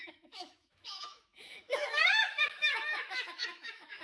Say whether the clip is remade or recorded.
remade